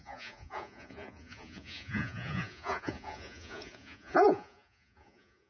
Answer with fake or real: fake